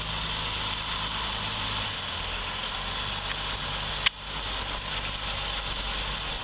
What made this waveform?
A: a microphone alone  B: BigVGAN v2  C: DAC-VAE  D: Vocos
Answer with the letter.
A